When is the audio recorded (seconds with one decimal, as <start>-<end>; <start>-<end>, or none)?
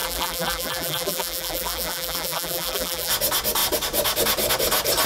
3.1-5.1